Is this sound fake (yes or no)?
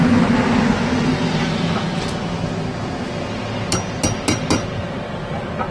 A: no